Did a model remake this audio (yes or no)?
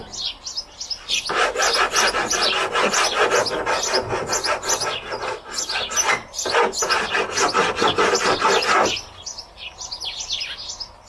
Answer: no